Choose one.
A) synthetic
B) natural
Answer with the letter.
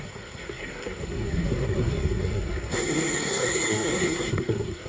A